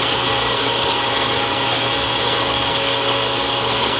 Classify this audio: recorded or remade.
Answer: remade